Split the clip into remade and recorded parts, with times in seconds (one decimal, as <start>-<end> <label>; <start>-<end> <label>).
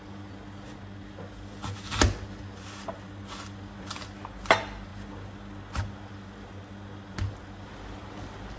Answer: 0.0-8.6 recorded